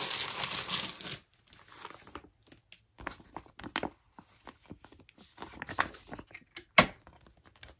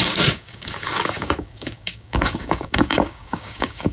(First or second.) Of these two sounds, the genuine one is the first